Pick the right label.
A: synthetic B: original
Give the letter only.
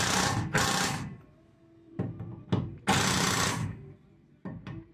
B